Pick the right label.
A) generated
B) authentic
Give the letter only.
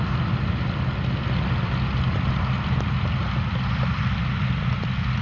B